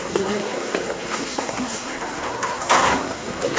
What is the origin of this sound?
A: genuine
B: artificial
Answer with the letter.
B